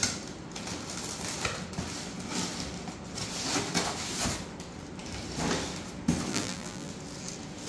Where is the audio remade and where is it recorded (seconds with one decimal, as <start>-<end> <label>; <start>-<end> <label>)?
0.0-6.3 recorded; 6.3-6.9 remade; 6.9-7.7 recorded